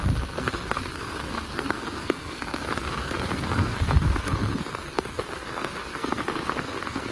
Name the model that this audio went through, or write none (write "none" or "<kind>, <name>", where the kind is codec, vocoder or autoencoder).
codec, SNAC